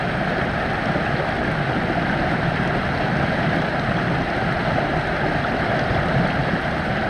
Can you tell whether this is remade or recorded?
recorded